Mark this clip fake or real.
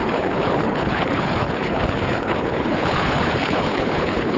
fake